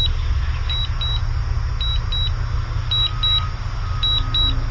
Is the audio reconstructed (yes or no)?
no